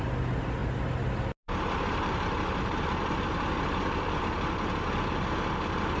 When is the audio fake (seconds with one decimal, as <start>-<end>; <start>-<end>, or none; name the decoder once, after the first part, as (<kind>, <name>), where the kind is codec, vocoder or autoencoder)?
none